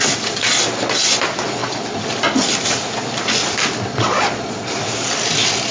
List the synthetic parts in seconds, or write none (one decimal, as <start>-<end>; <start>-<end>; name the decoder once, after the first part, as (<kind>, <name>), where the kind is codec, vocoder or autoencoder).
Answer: 3.9-4.7 (vocoder, Vocos)